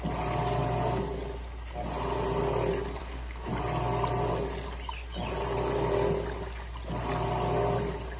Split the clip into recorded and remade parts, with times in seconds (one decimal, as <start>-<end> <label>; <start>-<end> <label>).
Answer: 0.0-3.0 recorded; 3.0-3.5 remade; 3.5-8.2 recorded